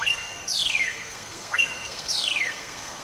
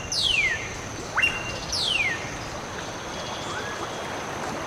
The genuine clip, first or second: second